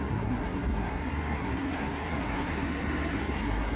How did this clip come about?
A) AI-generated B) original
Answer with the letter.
A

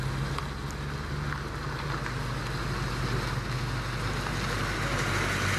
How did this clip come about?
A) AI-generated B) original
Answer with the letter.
B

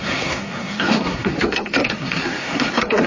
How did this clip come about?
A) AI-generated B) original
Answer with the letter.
A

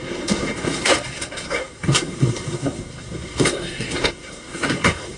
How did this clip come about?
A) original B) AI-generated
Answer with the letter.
B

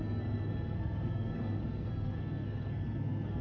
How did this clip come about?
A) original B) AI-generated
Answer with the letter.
B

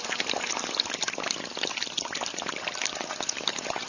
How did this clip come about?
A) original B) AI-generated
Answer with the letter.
A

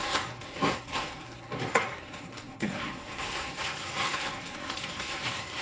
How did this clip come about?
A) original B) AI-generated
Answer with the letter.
B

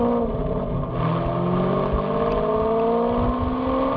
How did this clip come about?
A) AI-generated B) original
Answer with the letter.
B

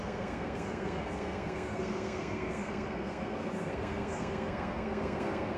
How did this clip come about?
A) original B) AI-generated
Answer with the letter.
B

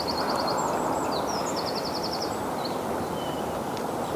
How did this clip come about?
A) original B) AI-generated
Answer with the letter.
A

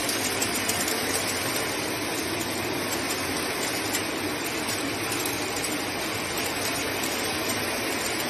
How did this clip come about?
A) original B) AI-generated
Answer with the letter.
A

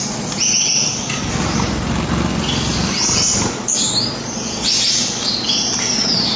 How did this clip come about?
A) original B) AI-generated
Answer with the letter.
A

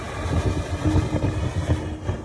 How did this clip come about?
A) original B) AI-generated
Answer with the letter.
A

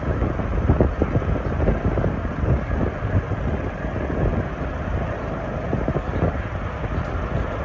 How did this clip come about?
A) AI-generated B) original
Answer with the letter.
B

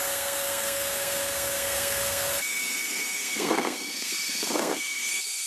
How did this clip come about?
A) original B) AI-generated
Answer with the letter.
B